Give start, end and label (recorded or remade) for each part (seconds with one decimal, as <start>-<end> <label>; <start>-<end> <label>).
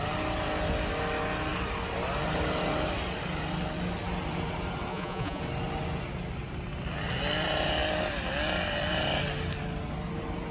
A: 0.0-4.9 recorded; 4.9-5.4 remade; 5.4-10.5 recorded